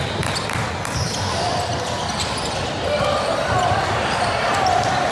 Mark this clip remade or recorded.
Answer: recorded